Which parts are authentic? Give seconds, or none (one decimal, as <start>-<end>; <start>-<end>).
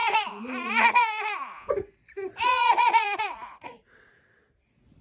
1.7-2.4; 4.1-5.0